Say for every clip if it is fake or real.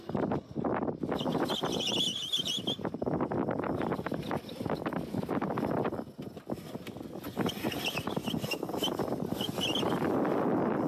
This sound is real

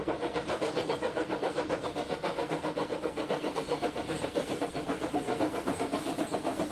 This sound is fake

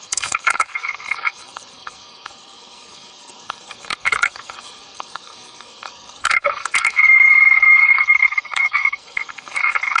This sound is fake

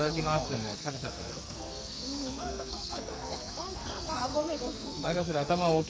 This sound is fake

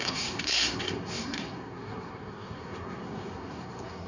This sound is fake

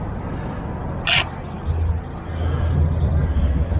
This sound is real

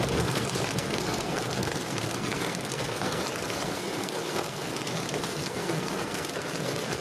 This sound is fake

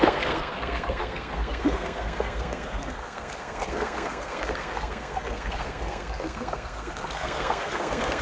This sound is fake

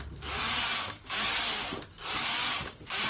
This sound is real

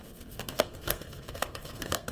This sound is fake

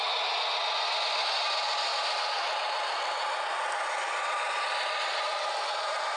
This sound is real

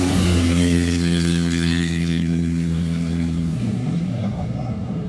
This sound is fake